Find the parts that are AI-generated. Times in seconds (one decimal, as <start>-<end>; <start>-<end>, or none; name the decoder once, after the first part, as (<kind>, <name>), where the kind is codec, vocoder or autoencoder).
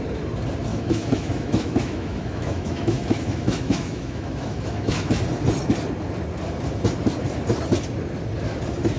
0.7-5.2 (autoencoder, DAC-VAE)